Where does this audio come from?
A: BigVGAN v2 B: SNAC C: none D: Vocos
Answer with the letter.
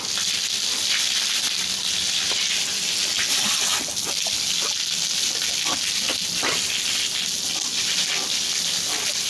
C